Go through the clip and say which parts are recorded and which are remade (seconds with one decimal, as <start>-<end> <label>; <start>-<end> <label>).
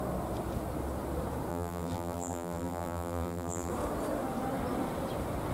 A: 0.0-1.5 recorded; 1.5-3.7 remade; 3.7-5.5 recorded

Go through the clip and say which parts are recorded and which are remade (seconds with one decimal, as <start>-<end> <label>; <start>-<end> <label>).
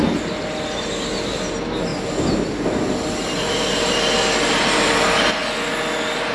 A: 0.0-1.9 recorded; 1.9-4.5 remade; 4.5-6.3 recorded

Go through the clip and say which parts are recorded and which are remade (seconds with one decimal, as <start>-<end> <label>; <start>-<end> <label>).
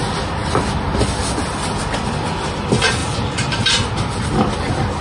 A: 0.0-3.0 recorded; 3.0-4.2 remade; 4.2-5.0 recorded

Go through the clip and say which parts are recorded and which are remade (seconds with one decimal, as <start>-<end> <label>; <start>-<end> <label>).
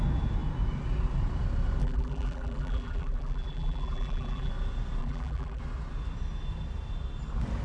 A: 0.0-1.8 recorded; 1.8-4.5 remade; 4.5-5.0 recorded; 5.0-5.6 remade; 5.6-7.6 recorded